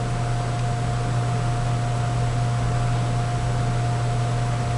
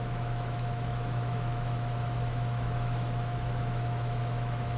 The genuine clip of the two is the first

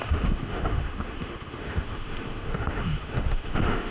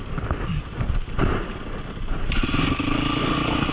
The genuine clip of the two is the second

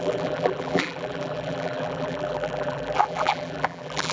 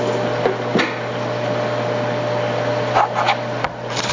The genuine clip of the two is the second